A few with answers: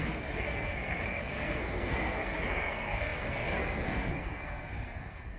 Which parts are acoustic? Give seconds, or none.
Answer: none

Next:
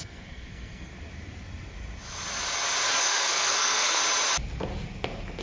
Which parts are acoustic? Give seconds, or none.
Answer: 0.9-3.0; 4.0-5.4

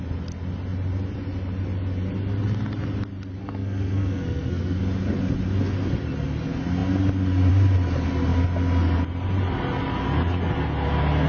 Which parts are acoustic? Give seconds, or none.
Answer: 0.0-3.4; 4.8-11.3

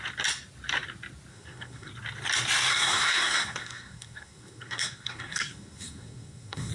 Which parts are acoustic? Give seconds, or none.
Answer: 0.0-1.3; 1.9-2.7

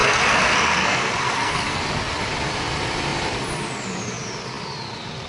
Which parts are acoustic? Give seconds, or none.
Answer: 1.8-5.3

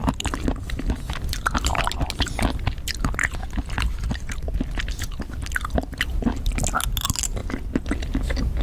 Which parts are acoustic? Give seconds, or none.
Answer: 0.0-8.6

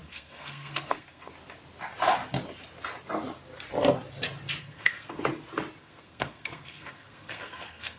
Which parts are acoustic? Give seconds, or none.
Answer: 1.3-4.6; 5.2-5.8

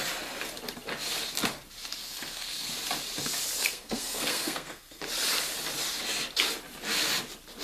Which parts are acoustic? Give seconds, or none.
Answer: 0.0-2.0; 2.7-3.6; 5.0-7.6